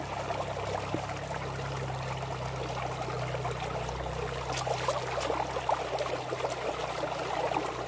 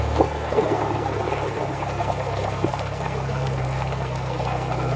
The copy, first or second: second